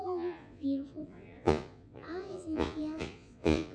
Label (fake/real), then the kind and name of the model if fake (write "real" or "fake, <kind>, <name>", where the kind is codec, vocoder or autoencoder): fake, vocoder, Vocos